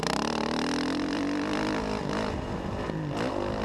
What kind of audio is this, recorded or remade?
recorded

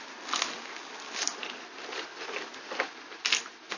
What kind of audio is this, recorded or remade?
recorded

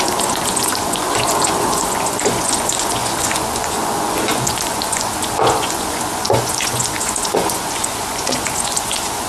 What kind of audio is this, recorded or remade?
remade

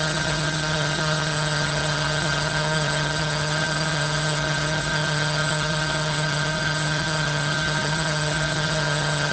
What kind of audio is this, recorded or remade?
remade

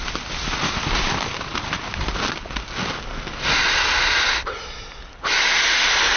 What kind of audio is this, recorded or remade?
recorded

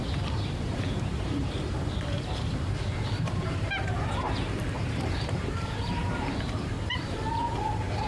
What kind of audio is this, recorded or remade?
remade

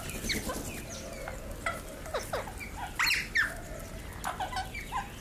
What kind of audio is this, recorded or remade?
recorded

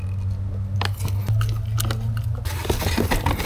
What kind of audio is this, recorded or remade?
recorded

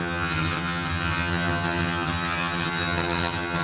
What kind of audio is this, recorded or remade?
remade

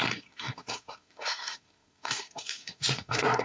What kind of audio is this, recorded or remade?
remade